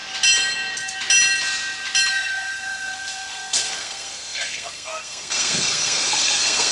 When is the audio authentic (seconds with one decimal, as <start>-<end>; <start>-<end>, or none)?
0.0-2.1